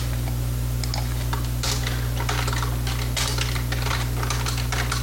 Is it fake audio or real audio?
real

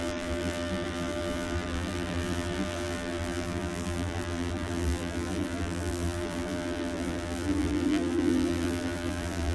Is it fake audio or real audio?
fake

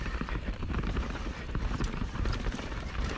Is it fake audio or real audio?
fake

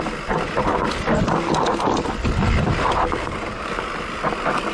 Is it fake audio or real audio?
real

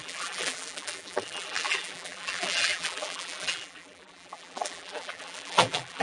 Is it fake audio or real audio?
fake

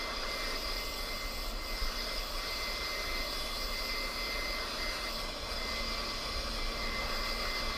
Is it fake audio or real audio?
real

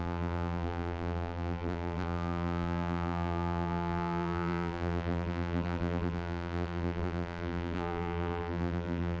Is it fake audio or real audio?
fake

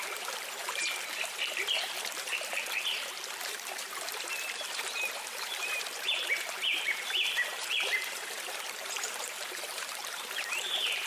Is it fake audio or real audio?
fake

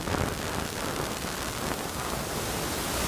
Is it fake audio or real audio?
real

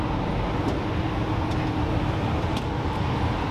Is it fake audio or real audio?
real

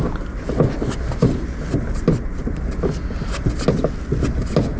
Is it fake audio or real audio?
real